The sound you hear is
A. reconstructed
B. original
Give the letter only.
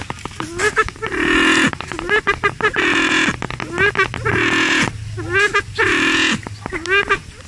B